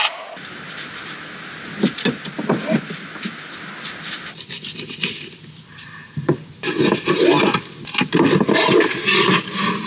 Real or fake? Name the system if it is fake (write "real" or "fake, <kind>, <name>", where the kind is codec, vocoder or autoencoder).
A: real